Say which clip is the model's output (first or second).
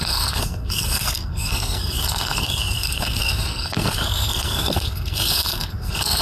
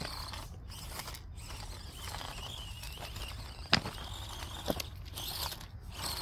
first